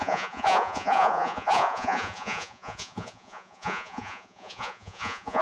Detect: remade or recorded remade